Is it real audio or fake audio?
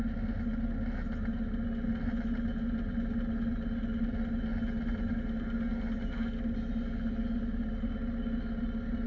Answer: real